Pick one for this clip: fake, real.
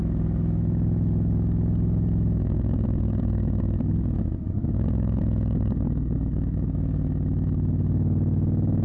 fake